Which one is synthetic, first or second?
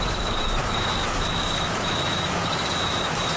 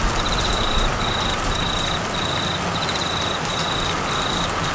first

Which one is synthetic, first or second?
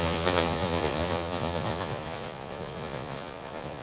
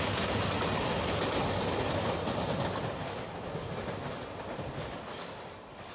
first